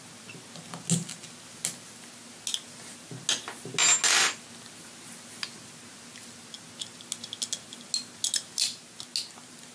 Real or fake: real